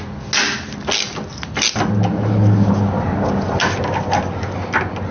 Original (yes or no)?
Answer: yes